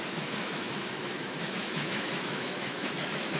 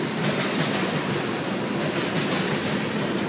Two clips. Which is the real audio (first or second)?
second